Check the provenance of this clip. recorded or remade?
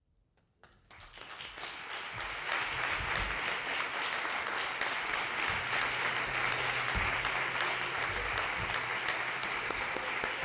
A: recorded